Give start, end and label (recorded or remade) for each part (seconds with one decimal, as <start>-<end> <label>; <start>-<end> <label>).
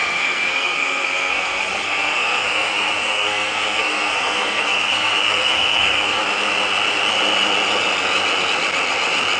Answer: 0.0-6.2 remade; 6.2-9.4 recorded